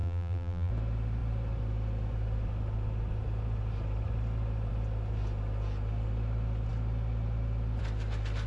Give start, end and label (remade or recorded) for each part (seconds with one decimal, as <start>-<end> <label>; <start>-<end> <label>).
0.0-0.7 remade; 0.7-8.5 recorded